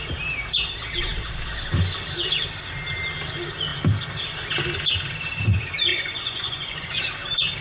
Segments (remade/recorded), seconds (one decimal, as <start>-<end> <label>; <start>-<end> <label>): 0.0-5.9 recorded; 5.9-7.0 remade; 7.0-7.6 recorded

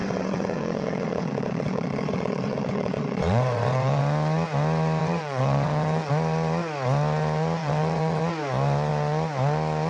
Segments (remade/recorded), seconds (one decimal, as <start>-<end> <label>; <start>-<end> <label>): 0.0-4.0 remade; 4.0-5.0 recorded; 5.0-6.1 remade; 6.1-7.6 recorded; 7.6-8.2 remade; 8.2-9.9 recorded

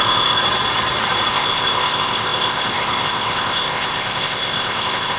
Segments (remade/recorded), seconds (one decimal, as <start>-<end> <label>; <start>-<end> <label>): 0.0-0.4 remade; 0.4-1.3 recorded; 1.3-5.2 remade

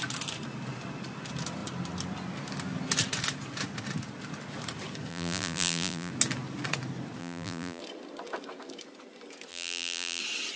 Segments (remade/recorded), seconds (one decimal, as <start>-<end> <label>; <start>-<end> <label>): 0.0-5.1 recorded; 5.1-6.1 remade; 6.1-7.2 recorded; 7.2-7.8 remade; 7.8-9.5 recorded; 9.5-10.2 remade; 10.2-10.6 recorded

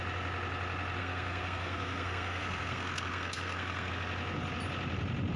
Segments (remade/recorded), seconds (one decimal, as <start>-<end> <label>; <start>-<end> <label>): 0.0-1.0 recorded; 1.0-3.9 remade; 3.9-5.4 recorded

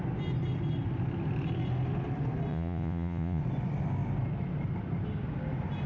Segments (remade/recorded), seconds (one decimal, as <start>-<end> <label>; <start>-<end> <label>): 0.0-2.5 recorded; 2.5-3.4 remade; 3.4-5.9 recorded

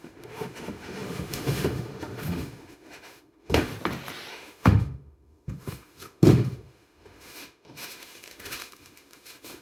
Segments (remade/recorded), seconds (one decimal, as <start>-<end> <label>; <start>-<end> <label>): 0.0-3.7 remade; 3.7-4.3 recorded; 4.3-9.6 remade

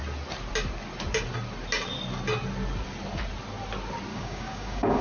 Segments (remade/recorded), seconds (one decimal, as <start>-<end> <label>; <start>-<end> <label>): 0.0-4.1 recorded; 4.1-5.0 remade